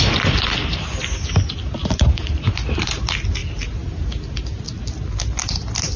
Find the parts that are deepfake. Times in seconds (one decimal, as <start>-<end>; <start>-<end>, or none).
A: 1.8-2.8